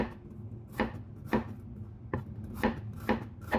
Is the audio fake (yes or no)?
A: no